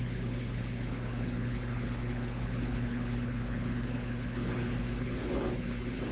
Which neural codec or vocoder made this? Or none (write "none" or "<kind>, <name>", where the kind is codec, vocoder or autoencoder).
codec, HILCodec